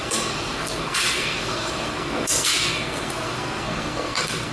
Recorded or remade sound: remade